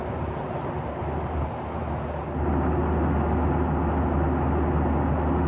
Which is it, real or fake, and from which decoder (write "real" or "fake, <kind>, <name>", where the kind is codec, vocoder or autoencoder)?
real